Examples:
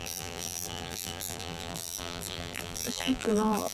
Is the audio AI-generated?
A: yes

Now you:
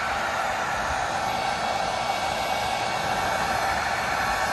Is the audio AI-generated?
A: no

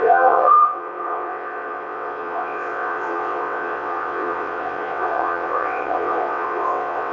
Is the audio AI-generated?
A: yes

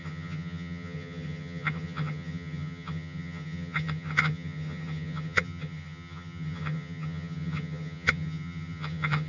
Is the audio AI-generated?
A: yes